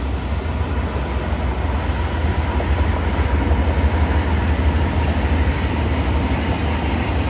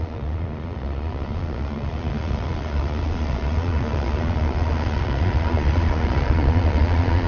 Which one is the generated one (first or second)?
second